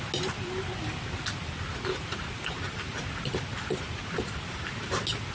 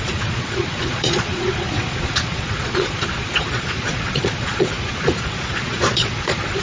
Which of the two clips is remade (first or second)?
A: second